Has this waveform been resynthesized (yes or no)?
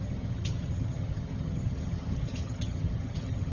yes